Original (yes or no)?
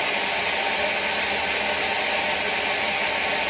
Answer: yes